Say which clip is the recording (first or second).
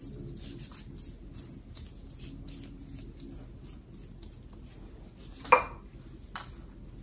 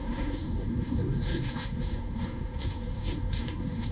first